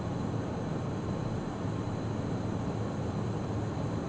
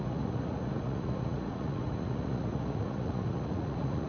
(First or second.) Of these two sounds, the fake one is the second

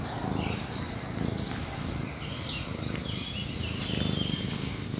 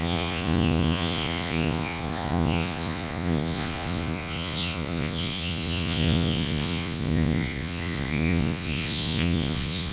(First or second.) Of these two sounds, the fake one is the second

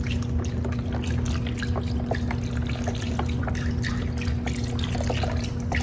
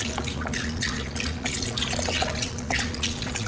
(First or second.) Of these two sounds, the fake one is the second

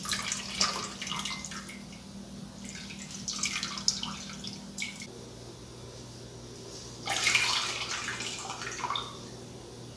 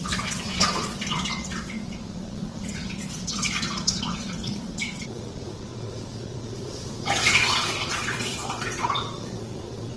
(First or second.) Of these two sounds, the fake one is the second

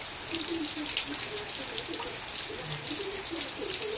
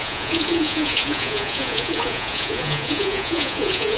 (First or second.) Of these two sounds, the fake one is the second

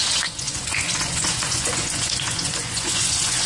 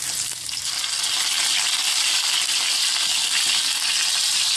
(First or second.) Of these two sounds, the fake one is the first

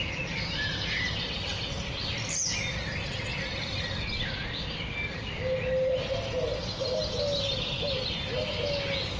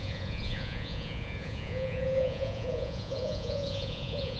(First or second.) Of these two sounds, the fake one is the second